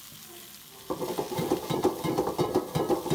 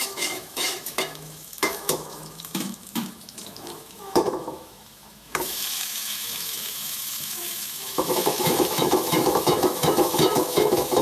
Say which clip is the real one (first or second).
first